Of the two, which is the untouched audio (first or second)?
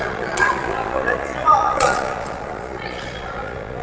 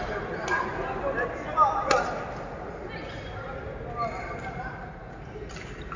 second